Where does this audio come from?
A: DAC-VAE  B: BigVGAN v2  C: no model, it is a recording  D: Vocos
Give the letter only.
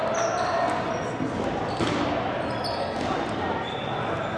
C